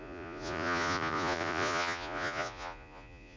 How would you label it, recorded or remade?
remade